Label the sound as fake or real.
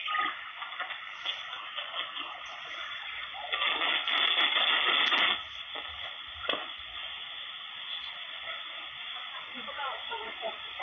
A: real